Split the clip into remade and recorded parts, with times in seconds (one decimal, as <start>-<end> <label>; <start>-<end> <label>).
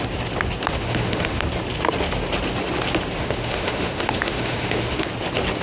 0.0-0.7 recorded; 0.7-1.4 remade; 1.4-3.2 recorded; 3.2-5.1 remade; 5.1-5.6 recorded